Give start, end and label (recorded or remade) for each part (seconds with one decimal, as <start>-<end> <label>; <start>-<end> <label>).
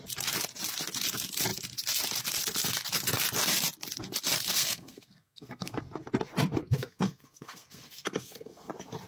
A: 0.0-4.5 recorded; 4.5-5.8 remade; 5.8-6.6 recorded; 6.6-8.7 remade; 8.7-9.1 recorded